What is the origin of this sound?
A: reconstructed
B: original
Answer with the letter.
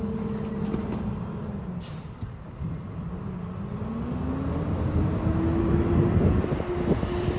B